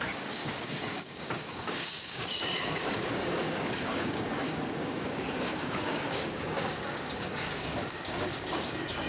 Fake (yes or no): yes